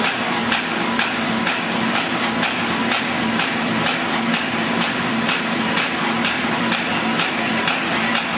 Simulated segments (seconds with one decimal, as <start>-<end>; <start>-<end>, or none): none